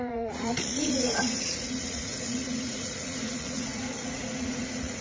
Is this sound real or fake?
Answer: fake